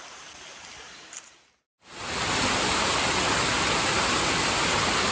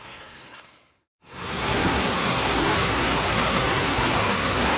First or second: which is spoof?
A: second